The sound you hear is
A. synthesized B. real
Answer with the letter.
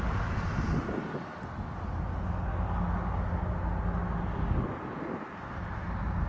B